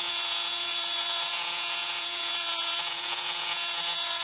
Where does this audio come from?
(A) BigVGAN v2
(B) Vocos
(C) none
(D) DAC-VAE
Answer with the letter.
B